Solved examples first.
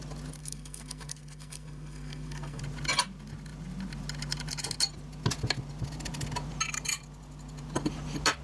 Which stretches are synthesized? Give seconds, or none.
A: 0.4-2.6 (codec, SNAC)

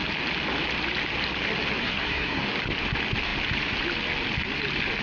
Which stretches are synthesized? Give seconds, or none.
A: 1.8-2.4 (codec, SNAC)

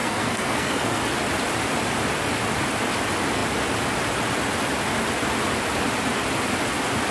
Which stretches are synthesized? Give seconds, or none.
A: 0.0-1.0 (codec, SNAC)

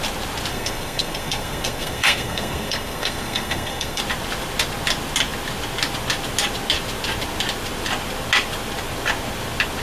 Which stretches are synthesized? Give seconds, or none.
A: 0.5-4.0 (codec, SNAC)

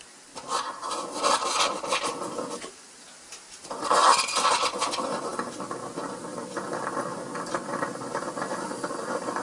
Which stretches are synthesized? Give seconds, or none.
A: none

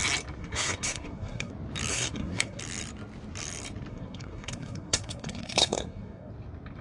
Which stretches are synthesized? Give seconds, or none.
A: 0.4-1.5 (codec, SNAC); 1.9-2.6; 3.9-6.3

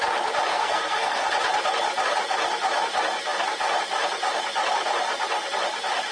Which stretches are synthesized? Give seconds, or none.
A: 0.5-1.3 (codec, SNAC)

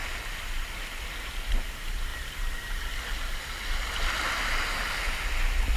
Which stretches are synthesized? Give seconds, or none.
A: none